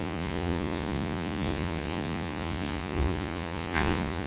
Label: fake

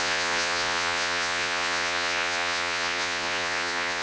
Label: fake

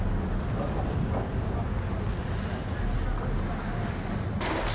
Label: real